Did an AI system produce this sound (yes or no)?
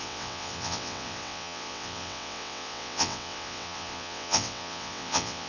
yes